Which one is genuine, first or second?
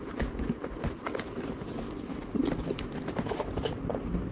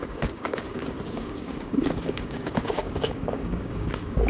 first